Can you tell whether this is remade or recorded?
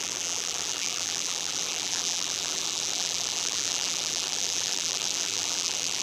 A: remade